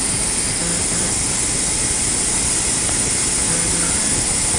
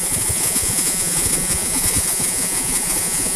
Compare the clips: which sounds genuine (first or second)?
first